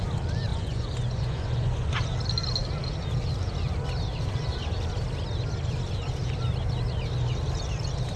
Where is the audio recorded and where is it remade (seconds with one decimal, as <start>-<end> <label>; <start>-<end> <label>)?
0.0-0.5 recorded; 0.5-1.9 remade; 1.9-8.2 recorded